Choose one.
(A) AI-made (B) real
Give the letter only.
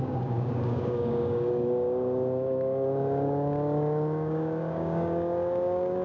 A